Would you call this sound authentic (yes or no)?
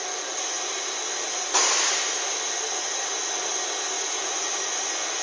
yes